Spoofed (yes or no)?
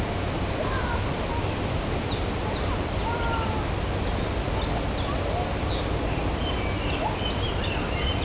no